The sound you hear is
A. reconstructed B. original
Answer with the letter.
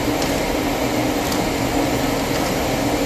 B